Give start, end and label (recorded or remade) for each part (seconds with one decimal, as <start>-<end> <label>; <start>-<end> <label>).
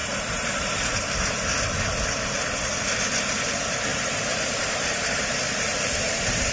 0.0-1.3 remade; 1.3-3.9 recorded; 3.9-6.5 remade